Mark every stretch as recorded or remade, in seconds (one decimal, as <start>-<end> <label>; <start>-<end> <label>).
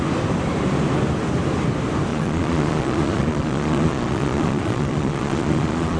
0.0-2.1 recorded; 2.1-6.0 remade